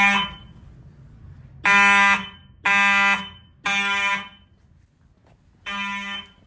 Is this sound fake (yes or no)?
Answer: no